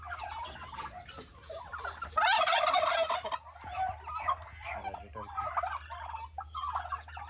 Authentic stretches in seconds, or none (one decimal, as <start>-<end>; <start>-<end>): 0.0-7.3